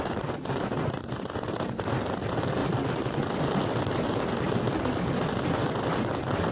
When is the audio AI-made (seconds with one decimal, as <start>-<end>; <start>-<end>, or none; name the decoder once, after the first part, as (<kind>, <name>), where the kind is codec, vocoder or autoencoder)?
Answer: none